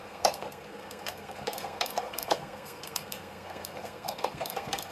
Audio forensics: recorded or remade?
remade